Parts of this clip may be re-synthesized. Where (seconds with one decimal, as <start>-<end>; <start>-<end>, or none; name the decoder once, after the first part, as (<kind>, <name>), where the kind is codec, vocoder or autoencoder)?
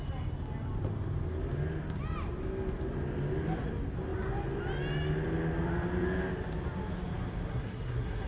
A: 7.5-8.3 (codec, SNAC)